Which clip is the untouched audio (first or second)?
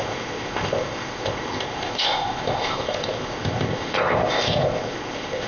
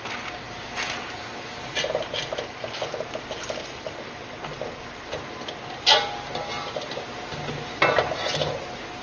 second